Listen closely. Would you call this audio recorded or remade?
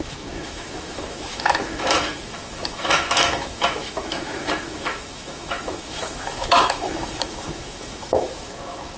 remade